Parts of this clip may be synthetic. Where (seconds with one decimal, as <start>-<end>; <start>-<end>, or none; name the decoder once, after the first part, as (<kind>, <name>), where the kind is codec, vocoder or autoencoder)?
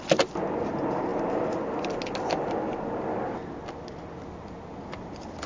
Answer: none